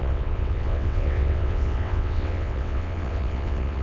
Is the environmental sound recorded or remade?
remade